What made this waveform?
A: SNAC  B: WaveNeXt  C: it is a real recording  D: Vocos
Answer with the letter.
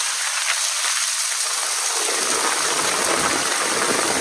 C